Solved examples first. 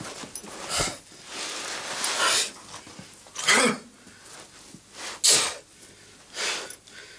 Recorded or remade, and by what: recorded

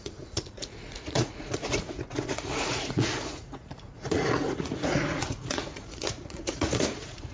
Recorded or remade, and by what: remade, vocoder, Vocos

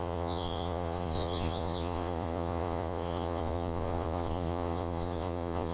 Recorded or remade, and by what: remade, vocoder, Vocos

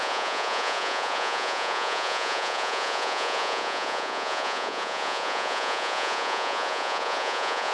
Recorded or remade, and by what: remade, vocoder, Vocos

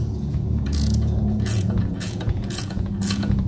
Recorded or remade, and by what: remade, vocoder, Vocos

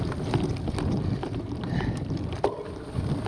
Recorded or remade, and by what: recorded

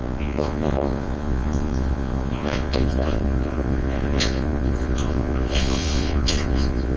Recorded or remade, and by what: remade, vocoder, Vocos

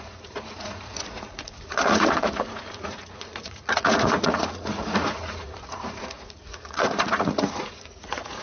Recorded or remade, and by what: remade, vocoder, Vocos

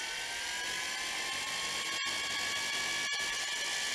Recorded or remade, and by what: recorded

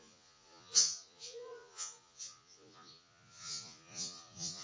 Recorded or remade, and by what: remade, vocoder, Vocos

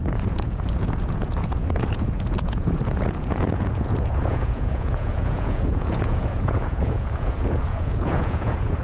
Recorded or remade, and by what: remade, vocoder, Vocos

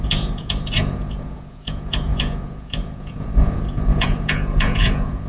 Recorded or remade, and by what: remade, vocoder, Vocos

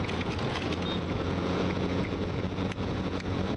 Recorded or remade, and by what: remade, vocoder, Vocos